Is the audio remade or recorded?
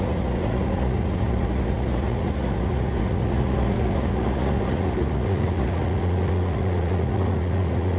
remade